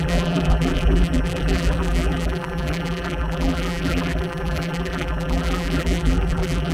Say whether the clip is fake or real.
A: fake